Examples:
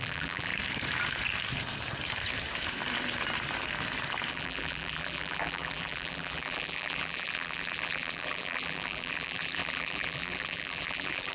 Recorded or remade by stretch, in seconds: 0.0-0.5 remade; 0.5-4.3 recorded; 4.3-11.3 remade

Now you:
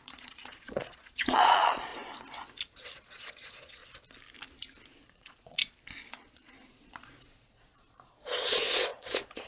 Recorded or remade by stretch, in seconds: 0.0-1.9 remade; 1.9-2.7 recorded; 2.7-3.8 remade; 3.8-4.9 recorded; 4.9-5.6 remade; 5.6-6.1 recorded; 6.1-9.5 remade

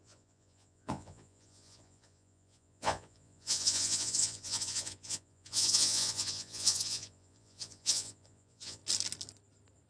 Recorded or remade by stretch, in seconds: 0.0-8.8 remade; 8.8-9.9 recorded

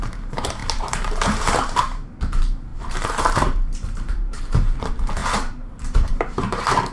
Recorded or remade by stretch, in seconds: 0.0-6.9 remade

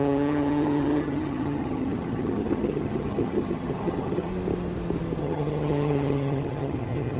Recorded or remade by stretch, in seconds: 0.0-4.3 remade; 4.3-5.2 recorded; 5.2-7.2 remade

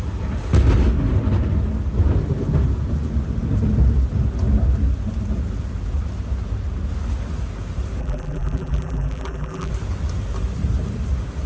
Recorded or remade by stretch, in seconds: 0.0-8.0 recorded; 8.0-9.7 remade; 9.7-11.5 recorded